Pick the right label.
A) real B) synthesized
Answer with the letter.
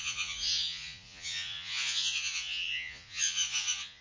B